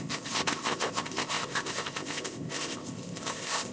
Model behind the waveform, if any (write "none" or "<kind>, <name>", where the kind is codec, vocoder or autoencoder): codec, ZipCodec